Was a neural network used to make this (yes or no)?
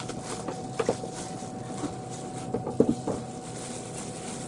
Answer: no